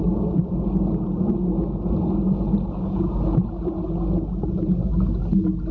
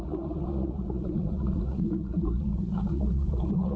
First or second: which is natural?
first